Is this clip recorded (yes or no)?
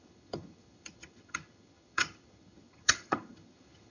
no